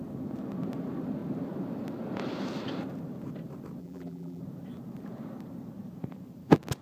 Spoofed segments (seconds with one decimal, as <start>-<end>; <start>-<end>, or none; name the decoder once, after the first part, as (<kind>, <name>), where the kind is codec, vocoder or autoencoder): 3.8-4.4 (vocoder, BigVGAN v2)